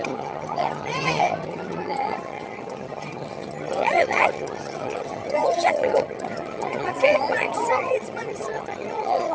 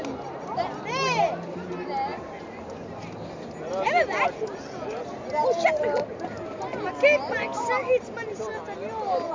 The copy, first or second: first